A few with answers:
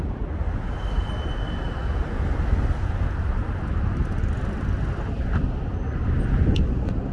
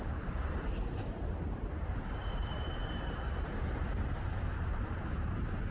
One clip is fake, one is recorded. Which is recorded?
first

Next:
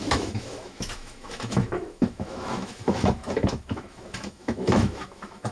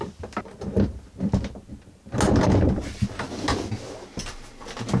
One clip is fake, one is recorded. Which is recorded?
second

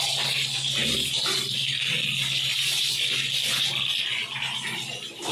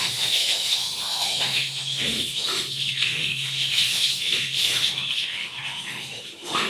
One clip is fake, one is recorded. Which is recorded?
first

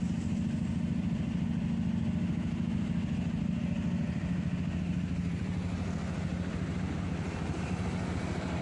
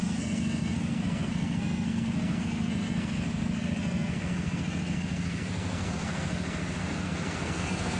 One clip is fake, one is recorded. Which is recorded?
first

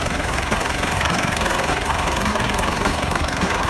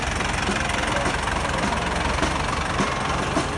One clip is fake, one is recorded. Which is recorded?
second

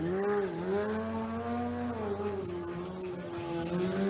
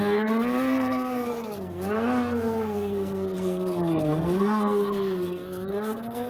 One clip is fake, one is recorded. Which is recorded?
first